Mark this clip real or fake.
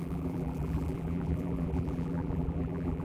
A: fake